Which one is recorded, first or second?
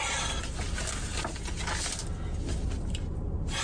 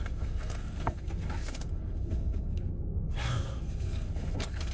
first